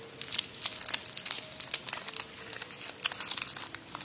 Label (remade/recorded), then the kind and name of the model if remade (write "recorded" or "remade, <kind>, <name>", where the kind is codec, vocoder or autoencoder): recorded